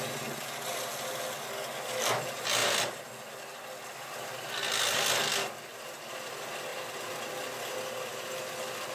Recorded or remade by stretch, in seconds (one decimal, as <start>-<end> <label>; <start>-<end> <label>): 0.0-8.9 recorded